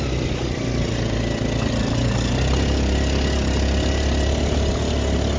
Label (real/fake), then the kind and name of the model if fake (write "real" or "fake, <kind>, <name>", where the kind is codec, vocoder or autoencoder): real